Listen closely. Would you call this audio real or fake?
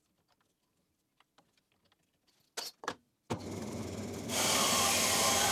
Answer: real